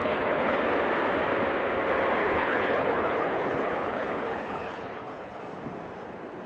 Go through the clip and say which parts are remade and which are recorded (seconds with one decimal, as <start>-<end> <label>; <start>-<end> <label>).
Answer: 0.0-0.6 remade; 0.6-2.2 recorded; 2.2-5.4 remade; 5.4-6.5 recorded

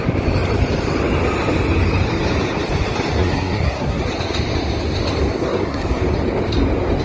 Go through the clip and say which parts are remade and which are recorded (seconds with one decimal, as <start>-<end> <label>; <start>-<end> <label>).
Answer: 0.0-3.2 recorded; 3.2-4.1 remade; 4.1-5.4 recorded; 5.4-6.0 remade; 6.0-7.0 recorded